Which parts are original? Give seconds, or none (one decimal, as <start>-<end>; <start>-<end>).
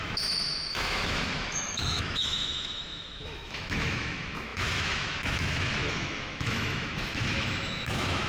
none